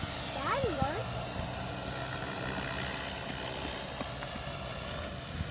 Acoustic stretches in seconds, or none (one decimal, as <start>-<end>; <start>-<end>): 0.0-5.5